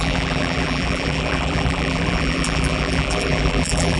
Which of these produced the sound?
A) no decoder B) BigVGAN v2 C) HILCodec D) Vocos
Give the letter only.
B